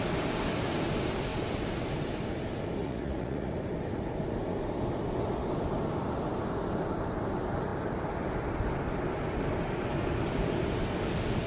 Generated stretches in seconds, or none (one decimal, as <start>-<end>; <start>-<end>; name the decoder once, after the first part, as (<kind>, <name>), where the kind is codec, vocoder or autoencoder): 2.8-3.5 (vocoder, Vocos)